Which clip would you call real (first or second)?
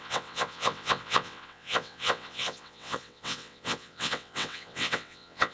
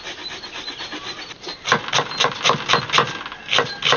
second